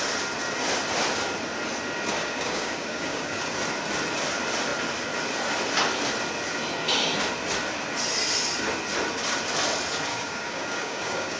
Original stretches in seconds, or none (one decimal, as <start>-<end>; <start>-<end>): 0.0-2.2; 3.4-10.1